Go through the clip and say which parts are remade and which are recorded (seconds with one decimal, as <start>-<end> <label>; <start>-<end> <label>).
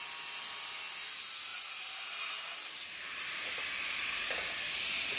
0.0-5.2 recorded